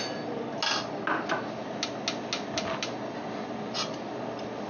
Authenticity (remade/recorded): recorded